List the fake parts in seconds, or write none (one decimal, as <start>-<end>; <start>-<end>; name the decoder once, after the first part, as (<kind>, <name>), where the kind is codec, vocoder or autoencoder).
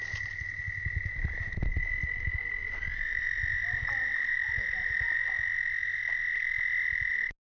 none